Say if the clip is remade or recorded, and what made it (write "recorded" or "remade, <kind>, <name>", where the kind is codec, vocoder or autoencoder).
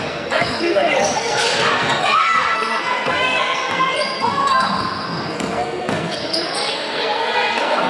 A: remade, codec, SNAC